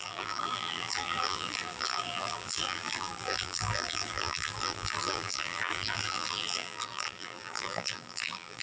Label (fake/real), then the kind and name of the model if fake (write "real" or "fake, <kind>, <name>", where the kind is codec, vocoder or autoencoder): fake, vocoder, BigVGAN v2